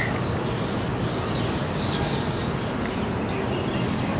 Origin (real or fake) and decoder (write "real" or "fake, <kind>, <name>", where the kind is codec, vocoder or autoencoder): real